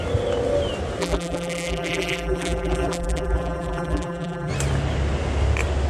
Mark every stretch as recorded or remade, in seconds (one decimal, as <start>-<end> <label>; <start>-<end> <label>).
0.0-1.0 recorded; 1.0-4.5 remade; 4.5-5.9 recorded